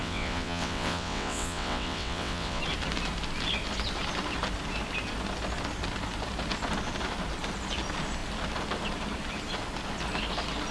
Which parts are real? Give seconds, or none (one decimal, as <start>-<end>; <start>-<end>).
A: 2.6-10.7